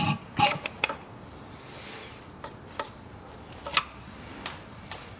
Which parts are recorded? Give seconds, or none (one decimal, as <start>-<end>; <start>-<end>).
0.0-5.2